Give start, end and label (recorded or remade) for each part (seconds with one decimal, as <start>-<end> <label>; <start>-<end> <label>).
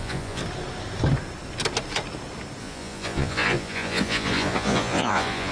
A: 0.0-0.4 remade; 0.4-2.6 recorded; 2.6-5.5 remade